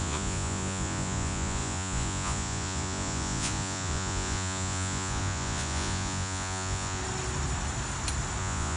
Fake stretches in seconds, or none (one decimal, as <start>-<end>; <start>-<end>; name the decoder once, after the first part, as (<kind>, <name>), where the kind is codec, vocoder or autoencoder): 0.0-7.0 (vocoder, Vocos); 8.4-8.8